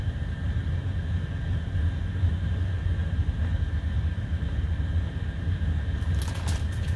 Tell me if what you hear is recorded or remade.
recorded